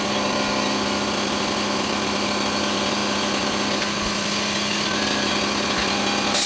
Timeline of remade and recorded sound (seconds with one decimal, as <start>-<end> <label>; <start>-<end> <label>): 0.0-6.5 recorded